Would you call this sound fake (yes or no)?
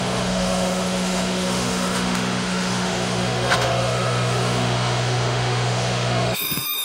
yes